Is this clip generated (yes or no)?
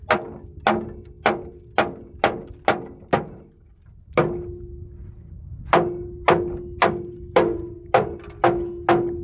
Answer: no